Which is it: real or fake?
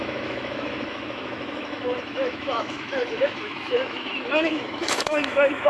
fake